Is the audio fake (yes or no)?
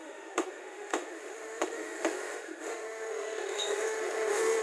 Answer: yes